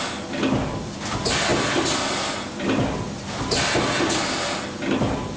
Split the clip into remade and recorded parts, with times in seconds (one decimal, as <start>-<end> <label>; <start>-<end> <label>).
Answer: 0.0-5.4 recorded